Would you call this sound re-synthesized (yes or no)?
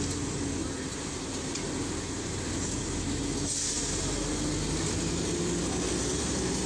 no